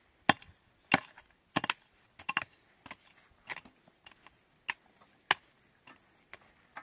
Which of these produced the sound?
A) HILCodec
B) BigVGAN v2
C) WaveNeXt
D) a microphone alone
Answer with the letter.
D